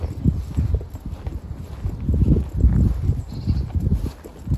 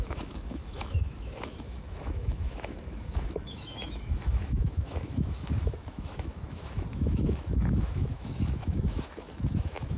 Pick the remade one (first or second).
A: second